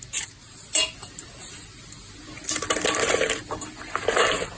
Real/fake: real